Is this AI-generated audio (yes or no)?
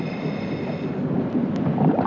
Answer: no